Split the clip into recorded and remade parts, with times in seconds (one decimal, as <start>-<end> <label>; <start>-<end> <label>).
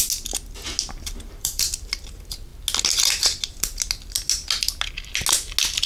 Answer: 0.0-1.4 recorded; 1.4-2.0 remade; 2.0-5.9 recorded